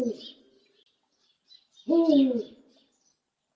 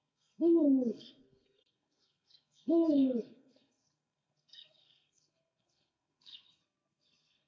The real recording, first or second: first